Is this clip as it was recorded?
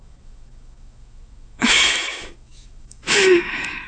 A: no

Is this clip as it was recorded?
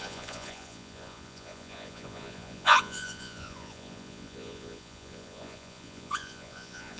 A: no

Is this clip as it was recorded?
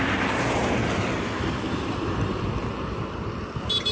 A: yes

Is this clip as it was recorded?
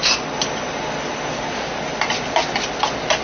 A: yes